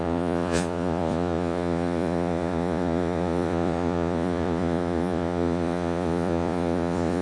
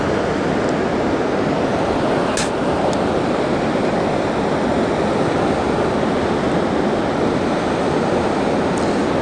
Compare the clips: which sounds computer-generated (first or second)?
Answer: first